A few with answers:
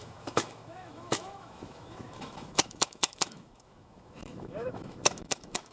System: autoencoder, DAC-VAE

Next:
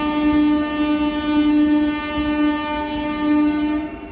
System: none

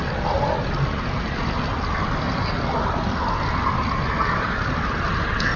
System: none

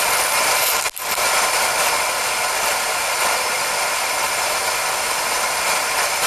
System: none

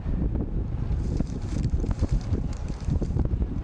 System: vocoder, BigVGAN v2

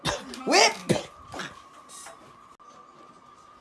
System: none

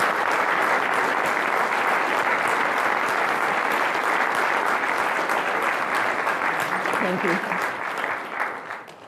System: none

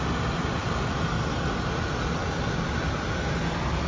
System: none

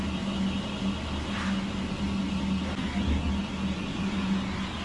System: none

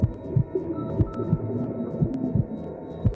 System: none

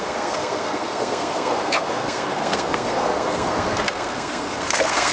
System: codec, SNAC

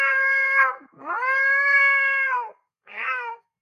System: codec, SNAC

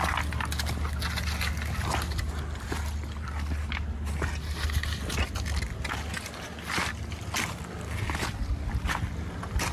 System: none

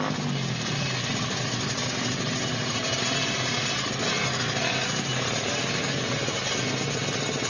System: none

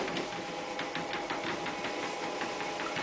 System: none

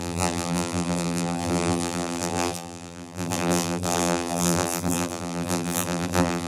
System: vocoder, BigVGAN v2